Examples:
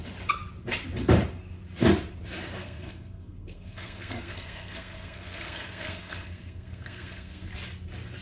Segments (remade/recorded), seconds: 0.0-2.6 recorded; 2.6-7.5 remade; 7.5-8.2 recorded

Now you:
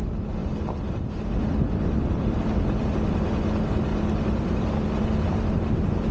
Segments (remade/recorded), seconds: 0.0-0.4 recorded; 0.4-1.0 remade; 1.0-2.2 recorded; 2.2-2.9 remade; 2.9-3.9 recorded; 3.9-5.3 remade; 5.3-6.1 recorded

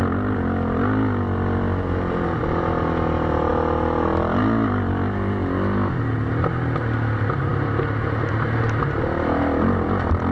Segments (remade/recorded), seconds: 0.0-10.3 recorded

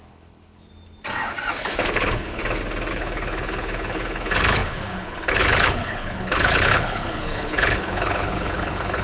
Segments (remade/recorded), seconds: 0.0-0.7 remade; 0.7-1.5 recorded; 1.5-2.4 remade; 2.4-2.9 recorded; 2.9-9.0 remade